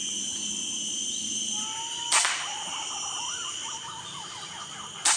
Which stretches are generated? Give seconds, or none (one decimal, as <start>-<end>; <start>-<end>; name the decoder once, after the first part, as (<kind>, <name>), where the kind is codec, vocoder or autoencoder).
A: none

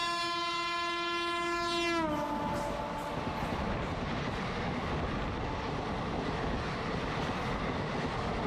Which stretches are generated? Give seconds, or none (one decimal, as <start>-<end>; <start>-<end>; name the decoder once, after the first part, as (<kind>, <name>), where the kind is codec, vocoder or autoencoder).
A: none